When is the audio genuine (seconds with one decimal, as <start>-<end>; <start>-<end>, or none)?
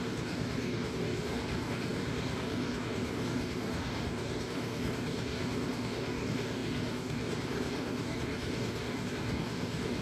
none